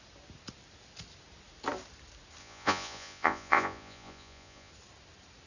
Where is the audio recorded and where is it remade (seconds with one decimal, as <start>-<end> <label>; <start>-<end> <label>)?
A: 0.0-2.4 recorded; 2.4-4.7 remade; 4.7-5.5 recorded